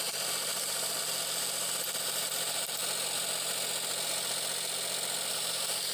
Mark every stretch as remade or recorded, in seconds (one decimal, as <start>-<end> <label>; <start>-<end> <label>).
0.0-2.8 remade; 2.8-5.3 recorded; 5.3-5.9 remade